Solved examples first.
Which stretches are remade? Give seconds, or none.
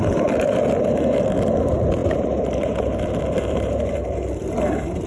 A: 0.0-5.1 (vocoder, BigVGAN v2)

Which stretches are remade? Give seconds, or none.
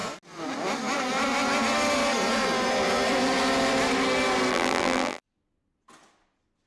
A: 4.5-5.2 (vocoder, BigVGAN v2)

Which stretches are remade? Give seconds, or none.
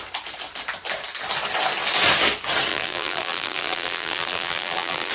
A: 2.7-5.1 (vocoder, BigVGAN v2)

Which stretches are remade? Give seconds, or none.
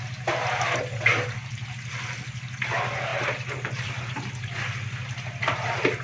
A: 3.1-4.0 (vocoder, BigVGAN v2)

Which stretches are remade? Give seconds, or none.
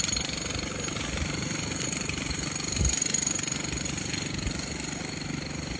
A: 0.5-4.0 (vocoder, BigVGAN v2)